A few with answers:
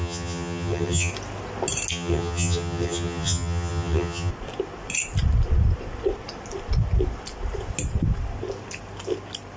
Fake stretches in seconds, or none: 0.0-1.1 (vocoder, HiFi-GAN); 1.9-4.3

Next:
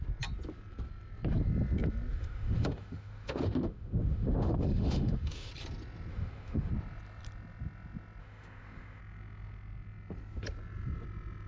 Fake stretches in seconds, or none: 2.1-5.5 (autoencoder, DAC-VAE); 6.1-6.7; 8.2-9.0

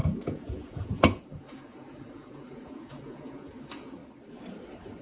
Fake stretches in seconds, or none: 0.0-4.0 (vocoder, Vocos)

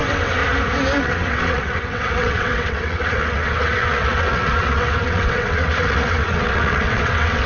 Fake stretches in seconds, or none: 0.0-0.4 (vocoder, WaveNeXt); 1.0-7.5